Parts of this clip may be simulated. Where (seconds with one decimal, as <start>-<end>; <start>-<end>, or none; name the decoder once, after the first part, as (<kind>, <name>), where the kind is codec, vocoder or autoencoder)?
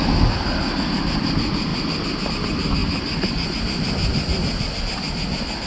1.7-2.3 (vocoder, BigVGAN v2); 2.8-4.8